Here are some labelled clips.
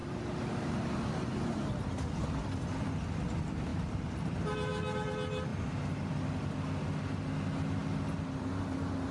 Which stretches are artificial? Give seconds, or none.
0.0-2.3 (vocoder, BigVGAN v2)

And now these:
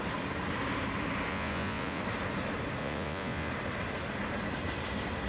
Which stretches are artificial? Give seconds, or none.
1.3-2.0 (vocoder, Vocos); 2.8-3.5

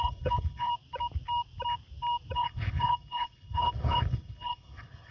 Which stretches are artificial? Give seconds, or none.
0.0-0.7 (codec, HILCodec); 2.3-5.1

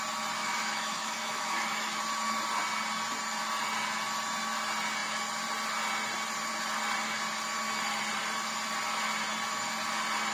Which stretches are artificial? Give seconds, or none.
0.4-2.0 (autoencoder, DAC-VAE)

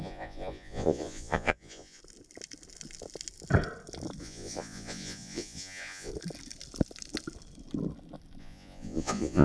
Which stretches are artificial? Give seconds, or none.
0.0-2.0 (vocoder, Vocos); 4.2-6.1; 8.4-9.4